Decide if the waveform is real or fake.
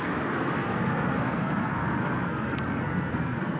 fake